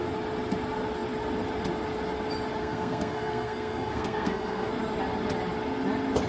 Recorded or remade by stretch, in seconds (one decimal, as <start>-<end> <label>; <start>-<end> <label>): 0.0-2.6 recorded; 2.6-4.7 remade; 4.7-6.3 recorded

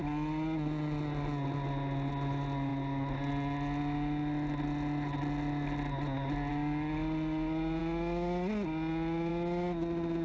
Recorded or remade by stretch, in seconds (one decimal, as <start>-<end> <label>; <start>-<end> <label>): 0.0-10.2 recorded

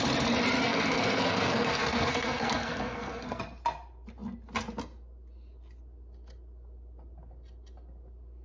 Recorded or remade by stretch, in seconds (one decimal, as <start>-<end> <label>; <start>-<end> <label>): 0.0-0.6 recorded; 0.6-3.4 remade; 3.4-8.4 recorded

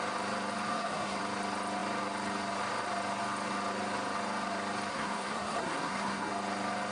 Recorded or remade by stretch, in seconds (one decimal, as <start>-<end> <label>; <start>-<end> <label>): 0.0-0.7 recorded; 0.7-1.2 remade; 1.2-4.9 recorded; 4.9-6.3 remade; 6.3-6.9 recorded

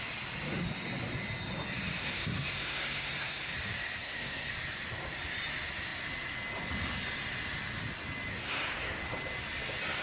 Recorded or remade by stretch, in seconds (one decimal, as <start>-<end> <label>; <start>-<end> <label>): 0.0-2.0 recorded; 2.0-3.5 remade; 3.5-4.0 recorded; 4.0-4.5 remade; 4.5-8.3 recorded; 8.3-9.0 remade; 9.0-10.0 recorded

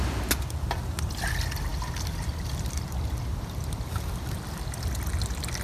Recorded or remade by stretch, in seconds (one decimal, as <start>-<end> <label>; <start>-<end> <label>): 0.0-5.6 recorded